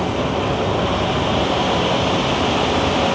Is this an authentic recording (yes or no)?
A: yes